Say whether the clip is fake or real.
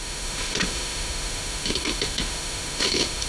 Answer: fake